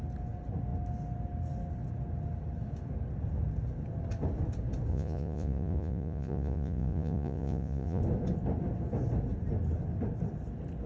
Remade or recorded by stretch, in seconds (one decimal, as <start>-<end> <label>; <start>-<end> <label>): 0.0-4.9 recorded; 4.9-8.0 remade; 8.0-10.9 recorded